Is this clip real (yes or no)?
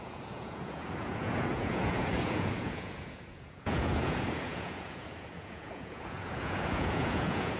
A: no